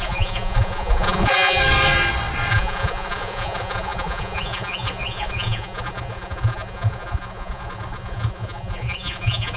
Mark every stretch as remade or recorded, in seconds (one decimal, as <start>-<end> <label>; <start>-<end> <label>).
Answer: 0.0-1.6 remade; 1.6-2.5 recorded; 2.5-9.6 remade